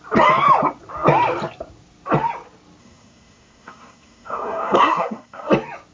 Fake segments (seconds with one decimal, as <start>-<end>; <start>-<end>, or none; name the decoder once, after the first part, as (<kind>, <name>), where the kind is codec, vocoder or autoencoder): 2.8-5.5 (codec, SNAC)